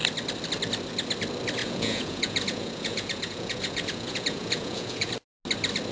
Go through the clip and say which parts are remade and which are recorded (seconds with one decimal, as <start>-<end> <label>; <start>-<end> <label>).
0.0-1.6 recorded; 1.6-5.1 remade; 5.1-5.9 recorded